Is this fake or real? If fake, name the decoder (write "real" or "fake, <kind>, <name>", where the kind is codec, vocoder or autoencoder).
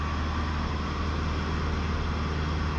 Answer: real